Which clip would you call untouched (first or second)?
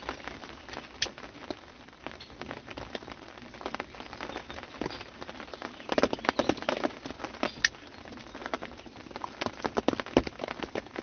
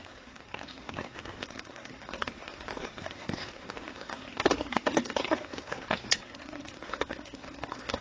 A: first